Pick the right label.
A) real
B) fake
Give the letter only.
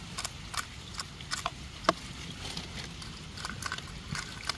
A